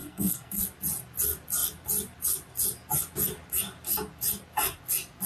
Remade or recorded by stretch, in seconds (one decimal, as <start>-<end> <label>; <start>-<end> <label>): 0.0-0.6 remade; 0.6-5.3 recorded